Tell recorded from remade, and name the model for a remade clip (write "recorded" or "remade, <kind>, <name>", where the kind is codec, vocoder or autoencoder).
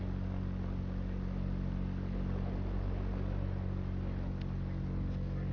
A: recorded